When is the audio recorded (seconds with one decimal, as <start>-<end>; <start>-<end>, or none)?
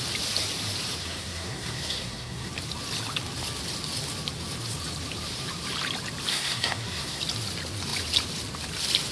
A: 0.0-1.0; 2.5-6.3; 7.2-9.1